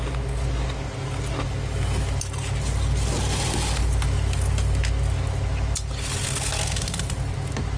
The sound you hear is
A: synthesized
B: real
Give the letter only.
B